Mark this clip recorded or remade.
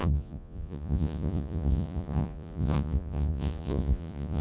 remade